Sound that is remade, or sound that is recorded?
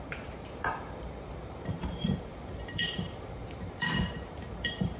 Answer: remade